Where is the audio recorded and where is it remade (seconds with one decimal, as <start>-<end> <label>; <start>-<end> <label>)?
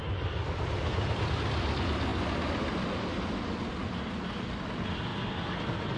0.0-6.0 recorded